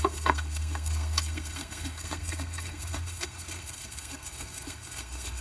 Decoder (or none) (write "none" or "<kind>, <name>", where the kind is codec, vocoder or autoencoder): codec, SNAC